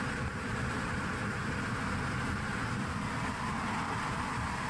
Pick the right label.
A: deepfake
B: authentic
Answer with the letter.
B